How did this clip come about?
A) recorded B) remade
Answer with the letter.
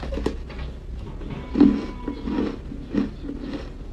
A